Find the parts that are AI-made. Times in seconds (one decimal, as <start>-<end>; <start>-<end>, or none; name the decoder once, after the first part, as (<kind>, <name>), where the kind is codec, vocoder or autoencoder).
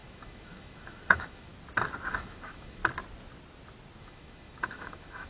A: 0.0-1.5 (autoencoder, DAC-VAE); 2.1-2.8; 4.0-5.3